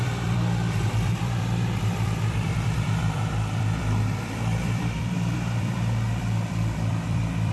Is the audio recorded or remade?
remade